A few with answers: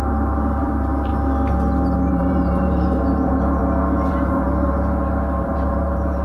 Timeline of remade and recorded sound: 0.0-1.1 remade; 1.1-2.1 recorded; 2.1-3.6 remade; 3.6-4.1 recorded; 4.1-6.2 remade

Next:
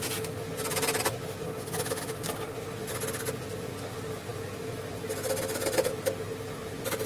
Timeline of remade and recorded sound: 0.0-7.1 recorded